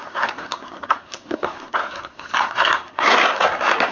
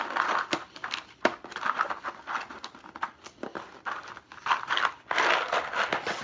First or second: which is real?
second